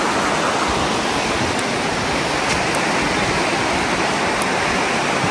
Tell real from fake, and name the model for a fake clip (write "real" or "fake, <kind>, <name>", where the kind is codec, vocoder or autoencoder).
real